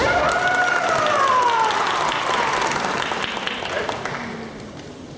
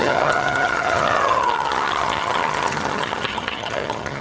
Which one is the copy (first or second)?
second